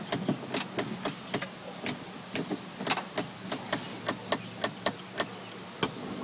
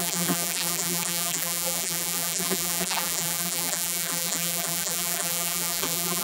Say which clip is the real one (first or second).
first